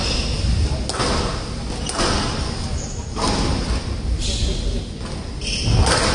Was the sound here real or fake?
real